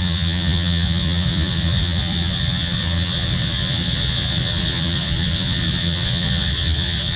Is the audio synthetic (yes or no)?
yes